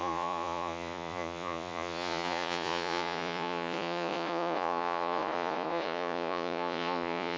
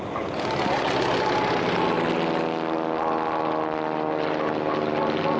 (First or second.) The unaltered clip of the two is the second